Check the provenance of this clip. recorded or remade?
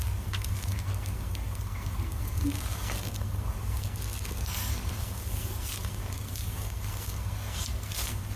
remade